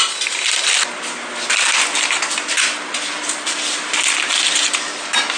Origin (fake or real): real